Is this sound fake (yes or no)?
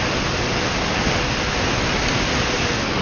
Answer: no